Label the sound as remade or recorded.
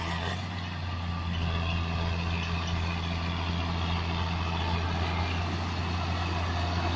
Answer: recorded